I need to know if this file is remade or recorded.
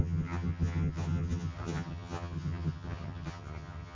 remade